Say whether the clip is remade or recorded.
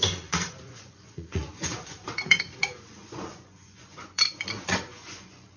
remade